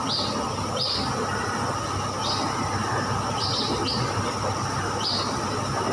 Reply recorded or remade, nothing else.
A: recorded